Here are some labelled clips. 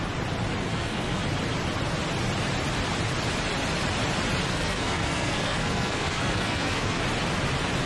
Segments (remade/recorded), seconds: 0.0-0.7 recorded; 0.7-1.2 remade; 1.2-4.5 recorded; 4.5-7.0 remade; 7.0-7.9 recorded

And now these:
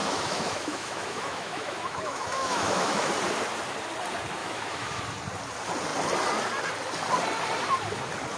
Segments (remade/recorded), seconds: 0.0-3.1 remade; 3.1-4.4 recorded; 4.4-5.0 remade; 5.0-8.4 recorded

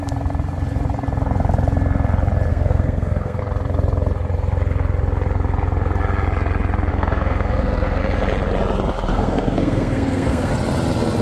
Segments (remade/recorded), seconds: 0.0-2.5 recorded; 2.5-3.4 remade; 3.4-6.9 recorded; 6.9-8.0 remade; 8.0-9.1 recorded; 9.1-10.5 remade; 10.5-11.2 recorded

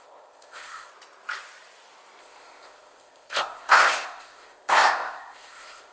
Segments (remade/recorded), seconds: 0.0-0.9 remade; 0.9-2.2 recorded; 2.2-5.9 remade